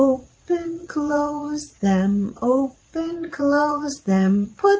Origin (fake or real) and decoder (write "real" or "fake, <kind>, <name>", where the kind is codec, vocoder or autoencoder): fake, vocoder, Vocos